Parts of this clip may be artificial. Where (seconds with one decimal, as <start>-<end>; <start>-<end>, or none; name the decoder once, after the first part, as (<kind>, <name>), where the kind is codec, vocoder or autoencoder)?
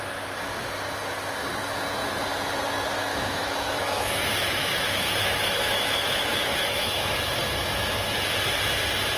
3.1-7.2 (autoencoder, DAC-VAE)